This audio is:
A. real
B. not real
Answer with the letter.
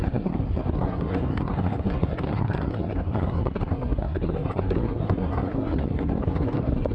B